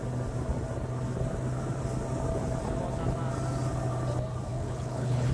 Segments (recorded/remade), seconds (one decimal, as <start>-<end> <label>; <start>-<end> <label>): 0.0-4.5 recorded; 4.5-5.3 remade